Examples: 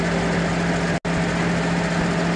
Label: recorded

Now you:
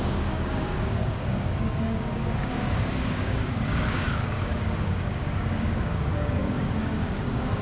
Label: remade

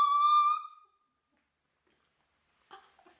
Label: recorded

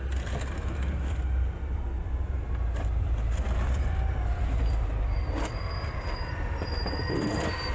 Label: remade